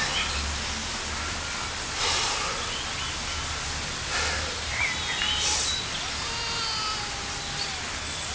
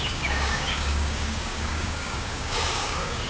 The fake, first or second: second